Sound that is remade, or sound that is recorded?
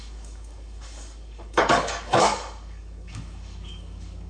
remade